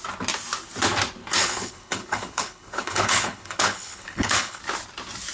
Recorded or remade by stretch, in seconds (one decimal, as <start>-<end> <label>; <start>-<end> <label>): 0.0-1.4 recorded; 1.4-4.6 remade; 4.6-5.3 recorded